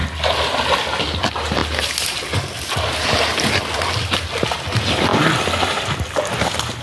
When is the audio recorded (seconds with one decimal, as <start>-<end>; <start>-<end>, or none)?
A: 0.0-6.8